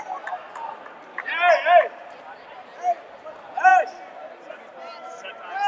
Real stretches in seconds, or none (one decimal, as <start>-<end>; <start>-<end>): 0.0-5.7